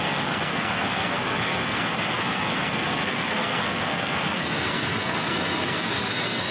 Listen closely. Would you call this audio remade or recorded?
remade